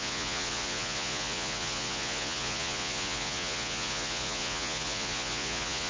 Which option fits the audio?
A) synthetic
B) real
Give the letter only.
A